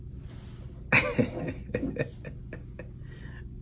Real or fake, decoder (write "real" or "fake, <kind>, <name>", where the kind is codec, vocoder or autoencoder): real